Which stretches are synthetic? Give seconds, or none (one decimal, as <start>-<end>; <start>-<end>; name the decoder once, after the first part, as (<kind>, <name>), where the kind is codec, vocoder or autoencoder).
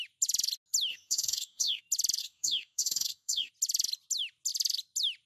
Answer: 0.9-1.8 (codec, DAC); 2.2-3.5